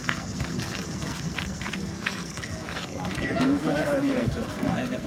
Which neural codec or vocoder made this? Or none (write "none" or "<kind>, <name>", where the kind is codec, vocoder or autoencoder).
codec, SNAC